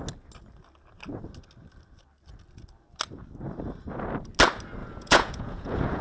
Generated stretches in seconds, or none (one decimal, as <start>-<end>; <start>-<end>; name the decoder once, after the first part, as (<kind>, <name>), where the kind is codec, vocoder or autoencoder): 4.8-6.0 (vocoder, Vocos)